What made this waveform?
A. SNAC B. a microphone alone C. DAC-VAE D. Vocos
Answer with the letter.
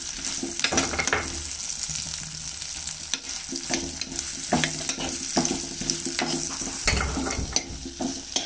B